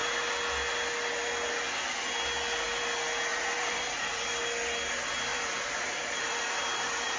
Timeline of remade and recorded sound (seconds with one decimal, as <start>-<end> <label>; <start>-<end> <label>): 0.0-3.3 recorded; 3.3-4.2 remade; 4.2-5.3 recorded; 5.3-7.2 remade